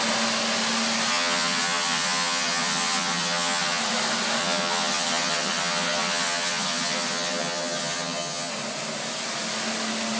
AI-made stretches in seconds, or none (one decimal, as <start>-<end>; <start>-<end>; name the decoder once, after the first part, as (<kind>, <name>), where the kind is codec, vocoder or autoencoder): 1.1-3.8 (vocoder, HiFi-GAN); 4.4-8.5